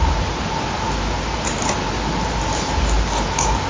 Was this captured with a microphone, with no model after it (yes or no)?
yes